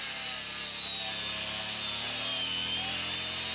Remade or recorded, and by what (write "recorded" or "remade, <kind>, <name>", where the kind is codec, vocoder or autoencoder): recorded